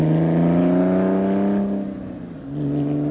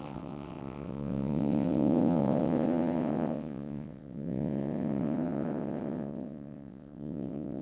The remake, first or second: second